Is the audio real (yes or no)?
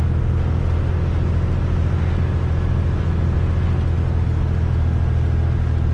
yes